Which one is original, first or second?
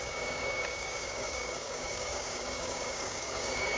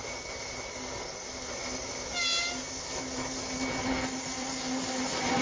second